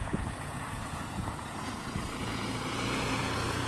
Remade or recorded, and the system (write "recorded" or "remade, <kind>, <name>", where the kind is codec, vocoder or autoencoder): remade, vocoder, Vocos